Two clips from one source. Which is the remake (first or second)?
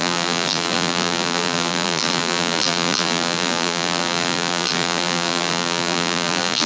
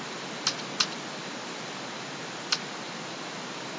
first